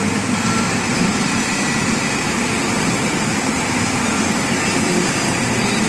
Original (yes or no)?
no